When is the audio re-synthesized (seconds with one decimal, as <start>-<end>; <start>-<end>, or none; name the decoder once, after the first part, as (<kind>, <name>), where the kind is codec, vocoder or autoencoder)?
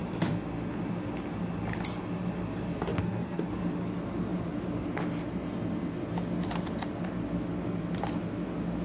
2.9-3.5 (codec, SNAC)